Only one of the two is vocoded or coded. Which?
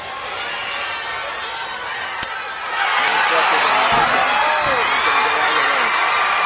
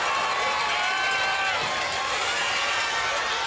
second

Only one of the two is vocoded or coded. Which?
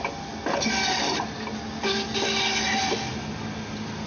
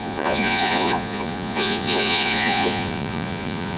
second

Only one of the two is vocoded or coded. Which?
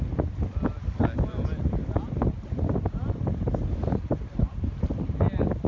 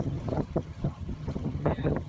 second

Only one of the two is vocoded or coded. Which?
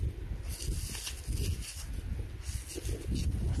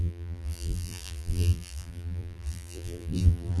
second